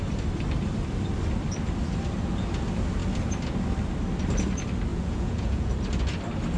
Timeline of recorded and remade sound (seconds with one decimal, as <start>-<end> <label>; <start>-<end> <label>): 0.0-4.9 recorded; 4.9-5.7 remade; 5.7-6.6 recorded